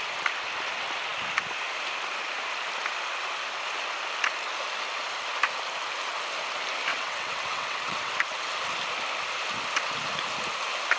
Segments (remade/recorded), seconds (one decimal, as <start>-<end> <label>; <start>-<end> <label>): 0.0-6.9 recorded; 6.9-8.1 remade; 8.1-11.0 recorded